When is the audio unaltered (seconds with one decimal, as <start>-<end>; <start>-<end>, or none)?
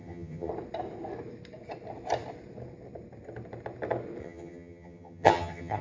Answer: 0.5-4.2